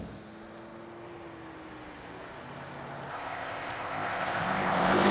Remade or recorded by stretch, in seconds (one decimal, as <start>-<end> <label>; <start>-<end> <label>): 0.0-3.1 recorded; 3.1-5.1 remade